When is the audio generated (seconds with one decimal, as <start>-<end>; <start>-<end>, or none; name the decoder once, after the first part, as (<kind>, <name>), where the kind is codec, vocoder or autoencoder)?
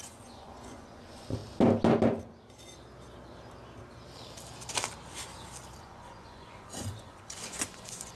0.0-1.4 (vocoder, Vocos); 5.8-8.1